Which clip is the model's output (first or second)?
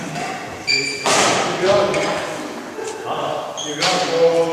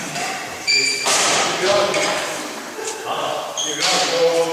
second